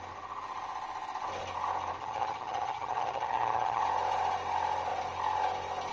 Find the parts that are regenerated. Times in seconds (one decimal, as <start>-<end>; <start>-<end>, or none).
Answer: 2.0-3.8